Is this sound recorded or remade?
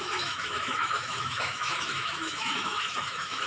remade